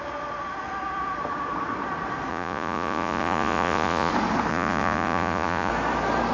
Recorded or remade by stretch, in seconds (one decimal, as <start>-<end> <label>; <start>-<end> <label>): 0.0-2.3 recorded; 2.3-4.1 remade; 4.1-4.5 recorded; 4.5-5.7 remade; 5.7-6.3 recorded